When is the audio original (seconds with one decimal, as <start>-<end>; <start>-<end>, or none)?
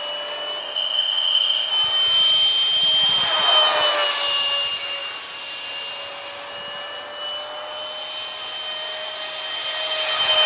0.0-0.6; 1.7-10.5